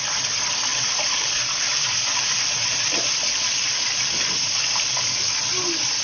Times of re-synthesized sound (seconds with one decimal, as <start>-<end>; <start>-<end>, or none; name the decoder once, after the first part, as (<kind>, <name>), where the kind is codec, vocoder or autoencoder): 0.7-4.3 (vocoder, BigVGAN v2)